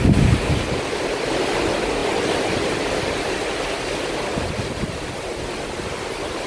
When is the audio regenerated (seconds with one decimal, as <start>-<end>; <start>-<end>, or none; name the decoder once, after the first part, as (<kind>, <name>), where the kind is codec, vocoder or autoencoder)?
none